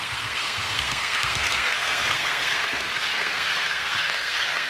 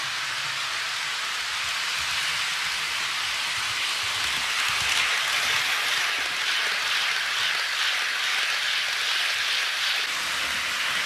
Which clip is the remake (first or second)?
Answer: first